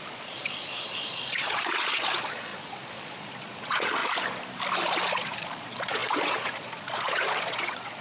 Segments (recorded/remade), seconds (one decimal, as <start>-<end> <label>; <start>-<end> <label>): 0.0-4.0 remade; 4.0-4.7 recorded; 4.7-8.0 remade